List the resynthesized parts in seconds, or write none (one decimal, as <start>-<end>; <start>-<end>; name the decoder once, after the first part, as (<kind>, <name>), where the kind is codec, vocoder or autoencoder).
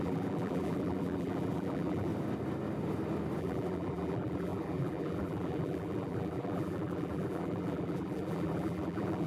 0.0-2.1 (vocoder, BigVGAN v2); 3.4-9.3